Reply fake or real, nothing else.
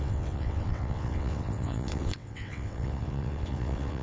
fake